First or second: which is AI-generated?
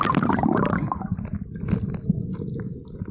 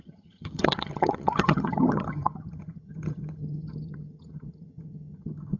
second